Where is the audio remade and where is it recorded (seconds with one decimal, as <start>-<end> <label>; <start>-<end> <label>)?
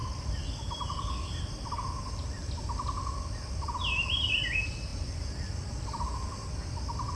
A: 0.0-1.9 recorded; 1.9-7.1 remade